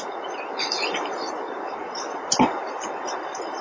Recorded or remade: recorded